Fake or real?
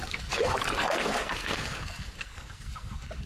fake